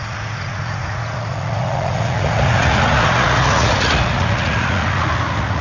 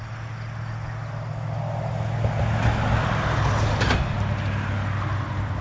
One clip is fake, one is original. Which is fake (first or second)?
first